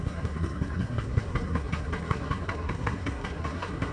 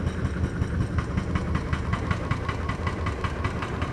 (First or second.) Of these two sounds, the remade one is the first